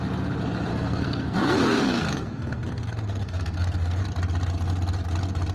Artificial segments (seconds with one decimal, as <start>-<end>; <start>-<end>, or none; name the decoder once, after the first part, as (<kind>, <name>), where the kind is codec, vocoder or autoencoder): 0.7-4.0 (codec, SNAC)